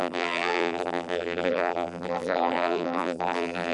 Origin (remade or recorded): remade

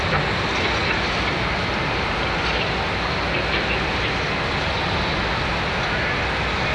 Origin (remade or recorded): recorded